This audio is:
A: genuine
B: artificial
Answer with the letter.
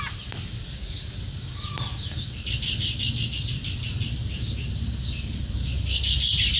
A